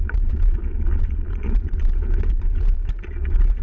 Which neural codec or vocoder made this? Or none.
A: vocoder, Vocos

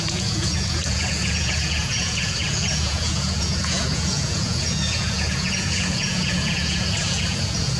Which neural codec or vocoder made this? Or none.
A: vocoder, Vocos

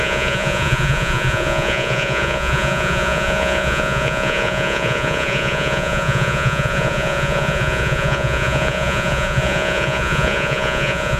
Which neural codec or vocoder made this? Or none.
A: vocoder, Vocos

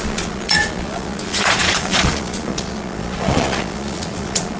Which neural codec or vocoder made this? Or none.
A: vocoder, Vocos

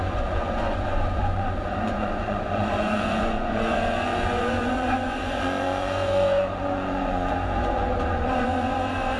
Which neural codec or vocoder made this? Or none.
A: vocoder, Vocos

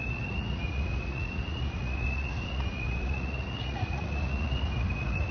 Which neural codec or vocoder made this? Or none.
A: vocoder, Vocos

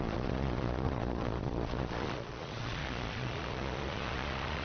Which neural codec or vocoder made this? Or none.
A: vocoder, Vocos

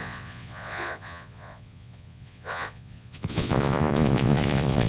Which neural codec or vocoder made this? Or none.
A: vocoder, Vocos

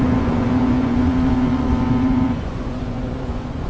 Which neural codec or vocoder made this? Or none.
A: vocoder, Vocos